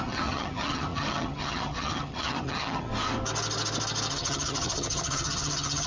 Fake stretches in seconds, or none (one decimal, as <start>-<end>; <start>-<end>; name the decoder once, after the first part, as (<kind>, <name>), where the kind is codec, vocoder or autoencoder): 0.0-2.9 (vocoder, HiFi-GAN); 4.1-5.9